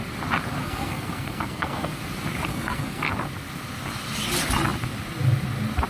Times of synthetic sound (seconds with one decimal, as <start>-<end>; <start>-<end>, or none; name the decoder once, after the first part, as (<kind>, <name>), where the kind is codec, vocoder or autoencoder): 0.6-2.0 (codec, SNAC); 2.5-3.1

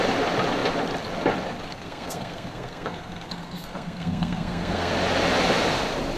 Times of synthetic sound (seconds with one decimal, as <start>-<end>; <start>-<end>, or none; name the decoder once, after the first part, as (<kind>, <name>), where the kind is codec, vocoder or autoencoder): 1.7-4.9 (codec, SNAC)

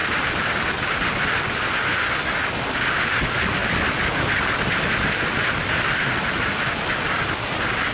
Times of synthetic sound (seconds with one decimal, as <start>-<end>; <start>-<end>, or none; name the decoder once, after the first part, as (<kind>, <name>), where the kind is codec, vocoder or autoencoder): none

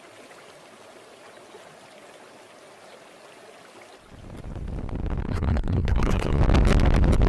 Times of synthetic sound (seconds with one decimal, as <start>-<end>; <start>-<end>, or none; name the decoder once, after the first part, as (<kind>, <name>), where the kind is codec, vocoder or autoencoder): 5.3-6.4 (codec, SNAC)

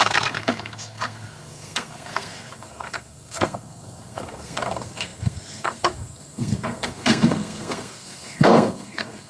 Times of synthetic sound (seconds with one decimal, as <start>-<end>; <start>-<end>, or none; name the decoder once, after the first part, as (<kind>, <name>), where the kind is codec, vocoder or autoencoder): 0.0-9.3 (codec, SNAC)